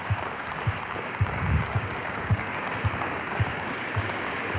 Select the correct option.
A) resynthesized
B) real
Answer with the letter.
A